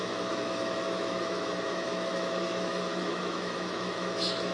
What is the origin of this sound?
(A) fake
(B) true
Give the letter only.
A